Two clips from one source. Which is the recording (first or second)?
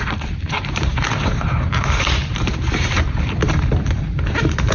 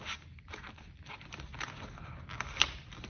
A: second